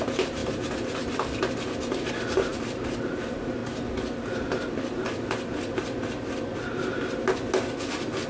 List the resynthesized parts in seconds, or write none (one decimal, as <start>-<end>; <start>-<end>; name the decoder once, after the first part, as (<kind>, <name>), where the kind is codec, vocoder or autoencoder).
0.0-0.4 (vocoder, BigVGAN v2); 2.1-2.5; 3.0-3.6